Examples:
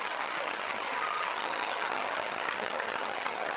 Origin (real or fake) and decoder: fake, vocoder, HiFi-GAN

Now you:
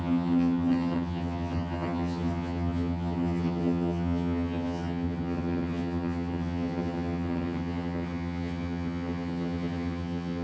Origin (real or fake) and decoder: fake, vocoder, HiFi-GAN